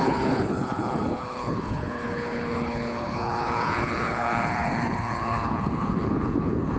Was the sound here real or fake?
fake